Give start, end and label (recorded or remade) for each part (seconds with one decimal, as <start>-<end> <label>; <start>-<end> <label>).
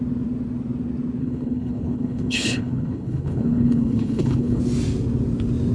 0.0-1.2 recorded; 1.2-4.6 remade; 4.6-5.7 recorded